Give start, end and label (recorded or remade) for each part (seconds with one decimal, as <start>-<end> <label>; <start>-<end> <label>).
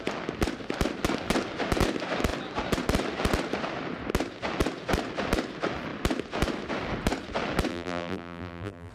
0.0-7.7 recorded; 7.7-8.9 remade